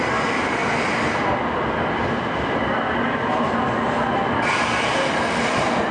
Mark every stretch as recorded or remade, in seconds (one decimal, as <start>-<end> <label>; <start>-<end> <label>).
0.0-5.9 recorded